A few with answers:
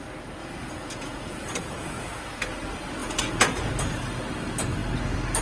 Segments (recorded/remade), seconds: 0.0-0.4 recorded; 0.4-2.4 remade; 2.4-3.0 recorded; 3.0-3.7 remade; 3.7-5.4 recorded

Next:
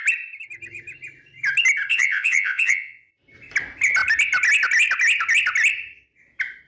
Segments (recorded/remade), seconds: 0.0-1.9 recorded; 1.9-3.1 remade; 3.1-6.7 recorded

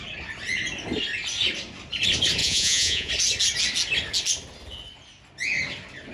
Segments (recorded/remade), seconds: 0.0-2.4 recorded; 2.4-3.1 remade; 3.1-6.1 recorded